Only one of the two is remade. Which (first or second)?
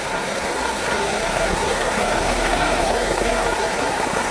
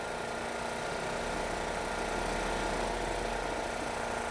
first